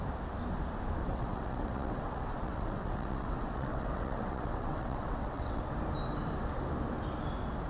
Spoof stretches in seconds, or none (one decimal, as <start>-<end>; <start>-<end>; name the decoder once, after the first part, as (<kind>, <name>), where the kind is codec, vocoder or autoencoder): 1.0-5.6 (vocoder, WaveNeXt)